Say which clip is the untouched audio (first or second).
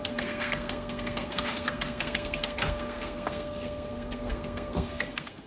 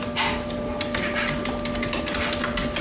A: second